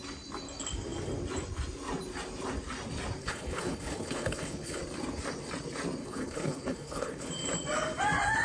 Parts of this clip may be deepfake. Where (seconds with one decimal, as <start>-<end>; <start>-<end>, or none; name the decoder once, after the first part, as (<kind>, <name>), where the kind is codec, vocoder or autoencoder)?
3.2-4.8 (codec, HILCodec); 6.0-7.3